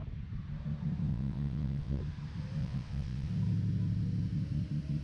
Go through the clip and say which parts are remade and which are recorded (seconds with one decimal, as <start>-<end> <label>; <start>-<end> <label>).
0.0-1.1 recorded; 1.1-2.0 remade; 2.0-2.6 recorded; 2.6-3.3 remade; 3.3-5.0 recorded